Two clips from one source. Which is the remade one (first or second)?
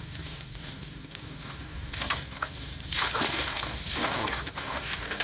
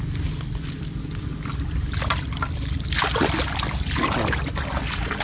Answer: first